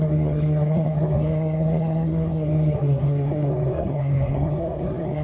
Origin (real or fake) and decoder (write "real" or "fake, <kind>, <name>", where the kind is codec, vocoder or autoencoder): fake, codec, SNAC